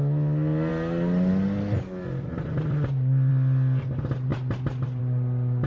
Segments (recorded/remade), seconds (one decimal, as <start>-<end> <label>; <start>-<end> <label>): 0.0-5.7 recorded